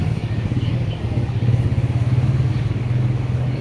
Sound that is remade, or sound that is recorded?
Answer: remade